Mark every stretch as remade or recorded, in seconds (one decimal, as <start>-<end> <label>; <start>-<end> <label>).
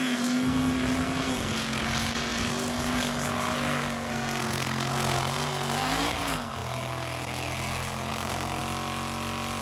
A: 0.0-8.6 remade; 8.6-9.6 recorded